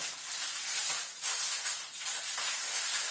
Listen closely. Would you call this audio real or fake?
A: real